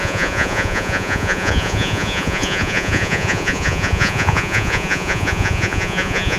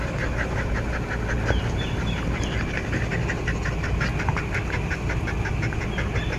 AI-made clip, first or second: first